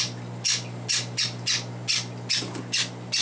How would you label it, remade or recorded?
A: recorded